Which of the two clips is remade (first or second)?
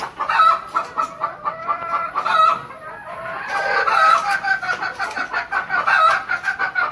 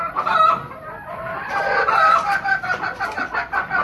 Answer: second